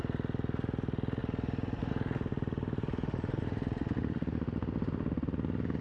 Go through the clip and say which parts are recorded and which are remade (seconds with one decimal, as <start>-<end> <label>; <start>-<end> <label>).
0.0-1.2 recorded; 1.2-1.9 remade; 1.9-2.3 recorded; 2.3-3.4 remade; 3.4-5.8 recorded